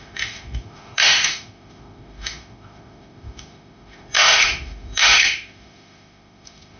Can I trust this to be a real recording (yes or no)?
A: no